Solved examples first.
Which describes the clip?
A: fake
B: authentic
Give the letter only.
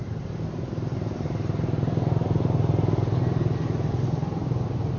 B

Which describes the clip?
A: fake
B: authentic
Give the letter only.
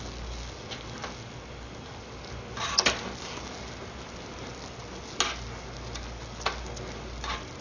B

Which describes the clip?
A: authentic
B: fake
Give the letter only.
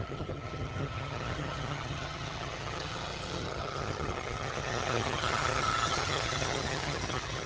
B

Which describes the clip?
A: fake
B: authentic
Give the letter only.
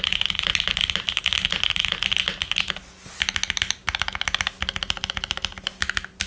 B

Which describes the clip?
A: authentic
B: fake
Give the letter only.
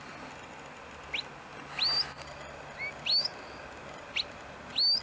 A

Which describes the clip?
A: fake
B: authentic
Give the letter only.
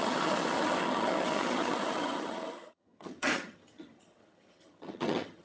A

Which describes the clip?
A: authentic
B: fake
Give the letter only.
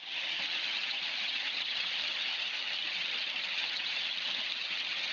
B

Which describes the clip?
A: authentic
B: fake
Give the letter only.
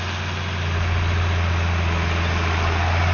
A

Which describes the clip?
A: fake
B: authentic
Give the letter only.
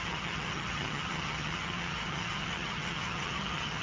A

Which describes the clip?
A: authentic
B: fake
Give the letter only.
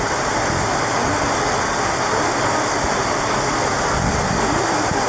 A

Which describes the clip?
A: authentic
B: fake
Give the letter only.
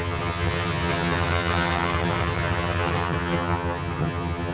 B